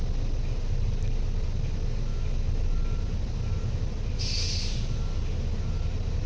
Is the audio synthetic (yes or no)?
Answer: no